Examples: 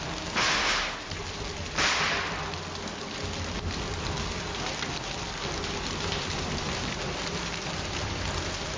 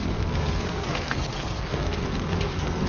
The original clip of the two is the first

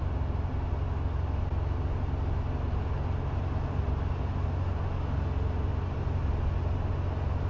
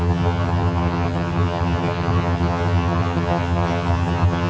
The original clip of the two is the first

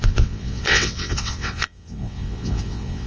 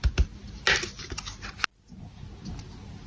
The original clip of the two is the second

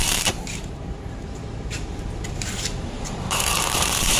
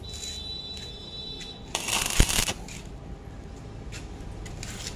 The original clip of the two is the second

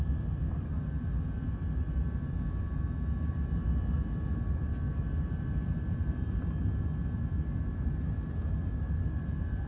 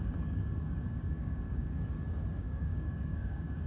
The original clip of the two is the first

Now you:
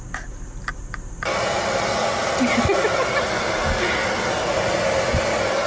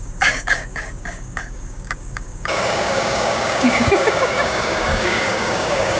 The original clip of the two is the first